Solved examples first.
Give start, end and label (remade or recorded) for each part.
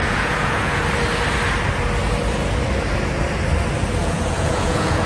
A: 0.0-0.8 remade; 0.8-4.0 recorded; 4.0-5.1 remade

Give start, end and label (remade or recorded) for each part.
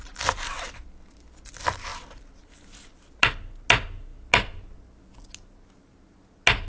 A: 0.0-6.7 recorded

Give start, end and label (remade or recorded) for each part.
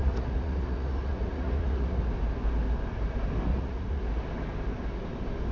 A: 0.0-2.0 remade; 2.0-3.5 recorded; 3.5-4.0 remade; 4.0-5.5 recorded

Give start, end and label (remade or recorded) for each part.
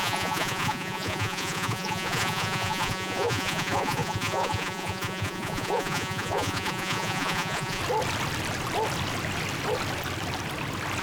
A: 0.0-7.8 remade; 7.8-11.0 recorded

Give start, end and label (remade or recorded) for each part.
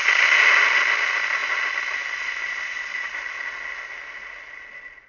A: 0.0-5.1 recorded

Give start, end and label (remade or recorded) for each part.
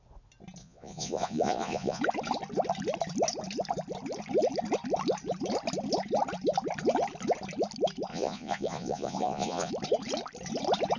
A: 0.0-0.6 recorded; 0.6-2.0 remade; 2.0-8.1 recorded; 8.1-9.7 remade; 9.7-11.0 recorded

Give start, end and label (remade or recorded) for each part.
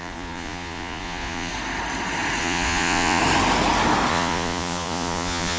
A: 0.0-1.5 remade; 1.5-2.4 recorded; 2.4-3.2 remade; 3.2-4.1 recorded; 4.1-5.6 remade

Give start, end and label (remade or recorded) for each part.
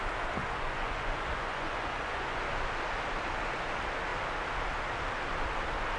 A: 0.0-0.4 recorded; 0.4-2.4 remade; 2.4-6.0 recorded